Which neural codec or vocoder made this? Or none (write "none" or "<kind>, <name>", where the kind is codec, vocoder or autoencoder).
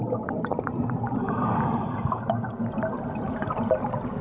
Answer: none